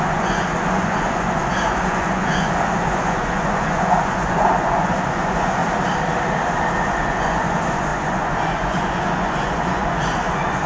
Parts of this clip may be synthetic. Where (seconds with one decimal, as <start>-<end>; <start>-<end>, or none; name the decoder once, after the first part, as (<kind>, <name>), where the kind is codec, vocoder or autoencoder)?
0.0-5.6 (vocoder, Vocos); 6.8-10.7